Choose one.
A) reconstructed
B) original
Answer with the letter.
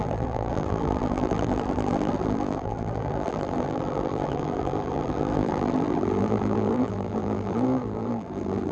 A